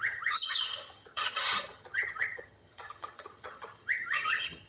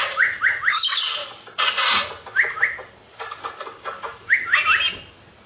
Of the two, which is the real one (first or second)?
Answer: second